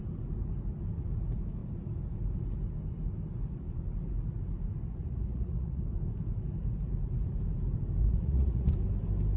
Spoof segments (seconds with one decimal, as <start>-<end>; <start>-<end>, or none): 5.0-5.8; 8.0-8.7